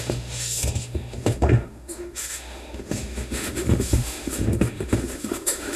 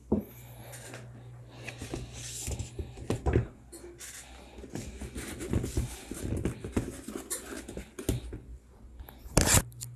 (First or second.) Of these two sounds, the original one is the second